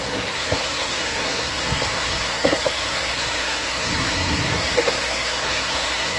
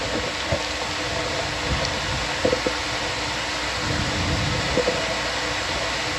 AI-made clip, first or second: first